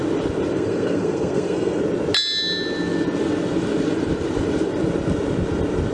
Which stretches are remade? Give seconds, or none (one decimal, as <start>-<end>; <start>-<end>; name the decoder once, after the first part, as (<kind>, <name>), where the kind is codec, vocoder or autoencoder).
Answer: 0.5-1.8 (codec, SNAC)